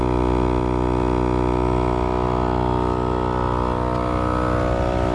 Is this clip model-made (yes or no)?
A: no